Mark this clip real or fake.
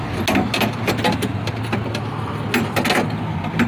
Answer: real